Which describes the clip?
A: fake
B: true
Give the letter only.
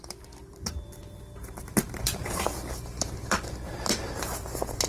A